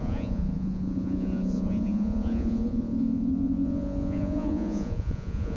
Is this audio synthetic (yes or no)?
yes